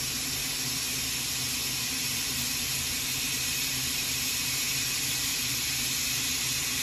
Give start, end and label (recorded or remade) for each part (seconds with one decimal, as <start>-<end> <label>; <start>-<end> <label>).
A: 0.0-0.4 remade; 0.4-1.8 recorded; 1.8-6.8 remade